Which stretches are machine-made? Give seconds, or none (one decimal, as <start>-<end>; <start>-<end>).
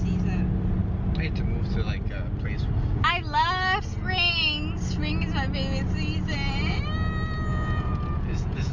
7.5-8.7